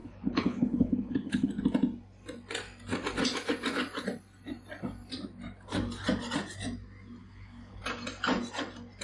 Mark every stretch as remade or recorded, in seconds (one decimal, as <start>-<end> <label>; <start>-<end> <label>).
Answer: 0.0-1.5 remade; 1.5-7.2 recorded; 7.2-7.8 remade; 7.8-9.0 recorded